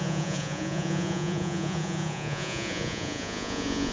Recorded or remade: remade